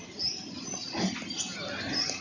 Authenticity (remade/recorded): recorded